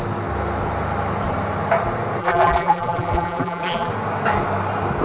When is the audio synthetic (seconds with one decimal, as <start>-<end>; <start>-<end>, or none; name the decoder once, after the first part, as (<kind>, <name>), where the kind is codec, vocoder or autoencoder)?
2.2-3.9 (vocoder, BigVGAN v2)